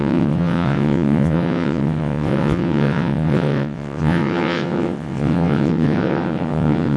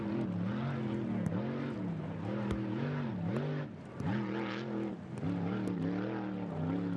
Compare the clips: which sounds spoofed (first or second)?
first